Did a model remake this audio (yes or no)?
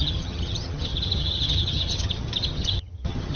yes